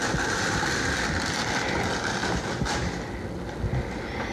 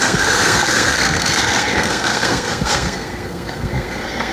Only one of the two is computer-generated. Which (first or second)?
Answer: second